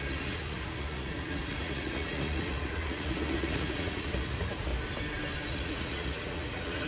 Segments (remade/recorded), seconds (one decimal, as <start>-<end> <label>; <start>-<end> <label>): 0.0-4.7 remade; 4.7-5.5 recorded; 5.5-6.9 remade

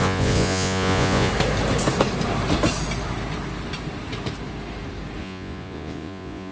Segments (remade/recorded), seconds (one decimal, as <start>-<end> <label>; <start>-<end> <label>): 0.0-1.3 remade; 1.3-5.2 recorded; 5.2-6.5 remade

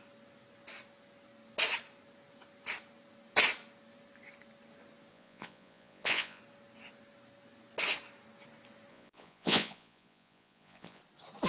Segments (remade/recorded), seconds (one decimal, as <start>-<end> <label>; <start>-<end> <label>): 0.0-5.1 recorded; 5.1-6.4 remade; 6.4-8.9 recorded; 8.9-11.0 remade; 11.0-11.5 recorded

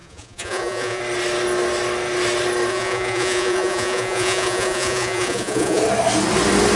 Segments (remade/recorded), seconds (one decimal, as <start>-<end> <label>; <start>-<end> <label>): 0.0-1.0 remade; 1.0-2.7 recorded; 2.7-5.8 remade; 5.8-6.8 recorded

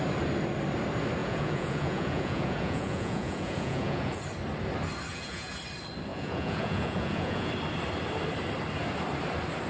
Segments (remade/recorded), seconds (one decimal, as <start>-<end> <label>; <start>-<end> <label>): 0.0-1.2 recorded; 1.2-4.2 remade; 4.2-5.1 recorded; 5.1-5.6 remade; 5.6-6.1 recorded; 6.1-7.5 remade; 7.5-9.7 recorded